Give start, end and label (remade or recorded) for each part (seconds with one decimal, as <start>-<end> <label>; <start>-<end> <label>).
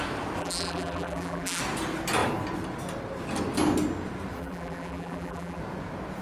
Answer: 0.0-0.4 recorded; 0.4-1.6 remade; 1.6-4.4 recorded; 4.4-5.6 remade; 5.6-6.2 recorded